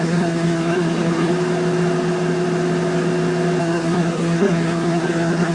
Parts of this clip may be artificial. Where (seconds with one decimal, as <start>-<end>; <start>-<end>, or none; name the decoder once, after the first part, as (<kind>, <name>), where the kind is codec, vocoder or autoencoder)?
0.0-1.3 (codec, SNAC); 3.6-5.5